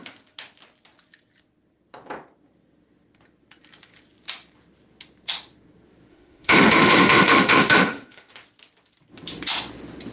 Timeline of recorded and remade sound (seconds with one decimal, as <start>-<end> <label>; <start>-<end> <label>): 0.0-6.1 recorded; 6.1-8.3 remade; 8.3-10.1 recorded